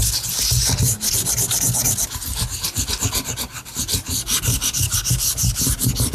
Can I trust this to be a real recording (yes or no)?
yes